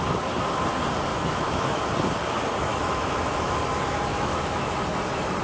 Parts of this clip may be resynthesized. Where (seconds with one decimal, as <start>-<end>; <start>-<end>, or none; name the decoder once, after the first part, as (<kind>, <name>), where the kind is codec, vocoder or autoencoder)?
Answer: 1.1-1.8 (autoencoder, DAC-VAE); 2.7-3.6; 4.1-4.8